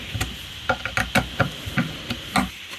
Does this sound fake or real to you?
real